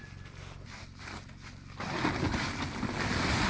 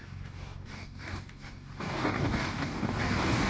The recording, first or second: first